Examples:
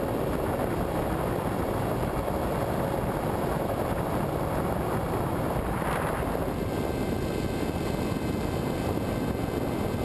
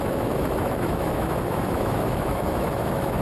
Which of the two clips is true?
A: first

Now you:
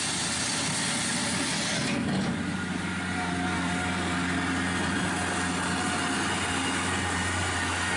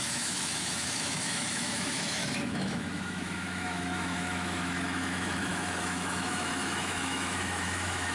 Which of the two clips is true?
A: first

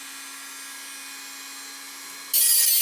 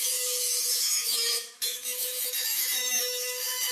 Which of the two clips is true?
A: first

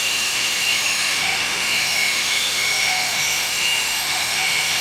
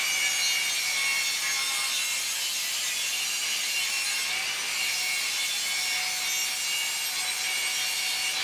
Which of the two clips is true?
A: second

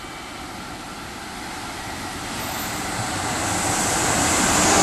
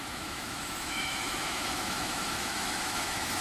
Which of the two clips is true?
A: first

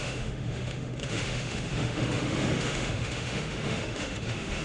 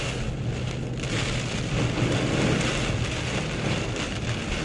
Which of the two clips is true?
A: second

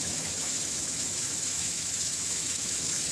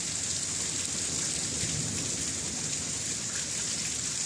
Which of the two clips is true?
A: second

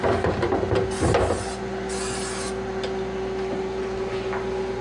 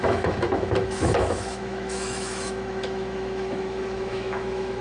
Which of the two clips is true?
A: first